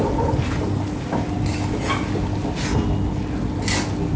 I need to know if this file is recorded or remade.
recorded